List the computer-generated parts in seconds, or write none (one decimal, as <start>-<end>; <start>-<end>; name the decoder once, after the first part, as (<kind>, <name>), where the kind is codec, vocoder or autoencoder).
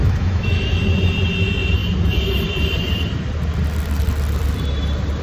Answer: 0.0-0.9 (autoencoder, DAC-VAE)